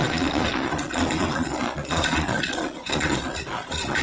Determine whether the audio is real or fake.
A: fake